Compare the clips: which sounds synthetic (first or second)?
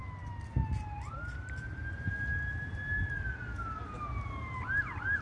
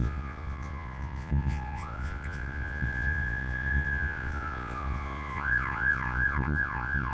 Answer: second